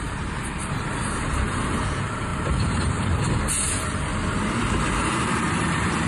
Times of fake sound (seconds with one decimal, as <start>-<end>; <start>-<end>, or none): 0.0-4.1; 4.9-6.1